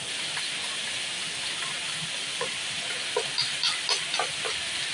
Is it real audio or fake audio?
real